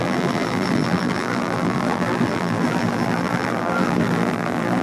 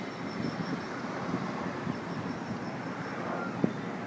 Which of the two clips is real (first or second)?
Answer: second